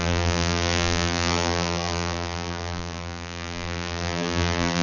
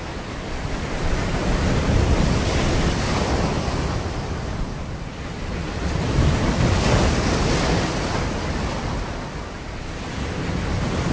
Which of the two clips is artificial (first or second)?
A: first